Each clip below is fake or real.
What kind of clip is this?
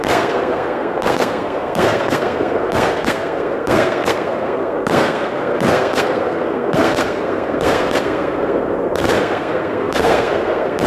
fake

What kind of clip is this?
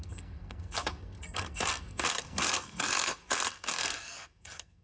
fake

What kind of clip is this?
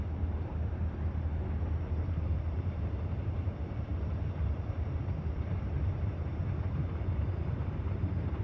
fake